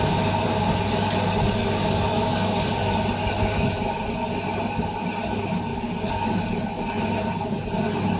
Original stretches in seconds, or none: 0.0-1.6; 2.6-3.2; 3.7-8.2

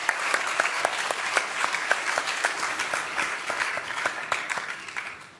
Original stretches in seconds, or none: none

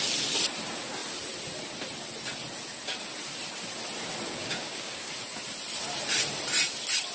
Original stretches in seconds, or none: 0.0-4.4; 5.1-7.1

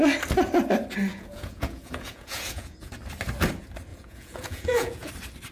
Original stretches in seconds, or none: 0.0-1.1; 3.0-3.9; 5.1-5.5

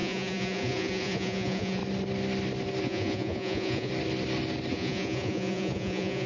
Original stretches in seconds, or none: 1.8-2.8; 3.9-4.7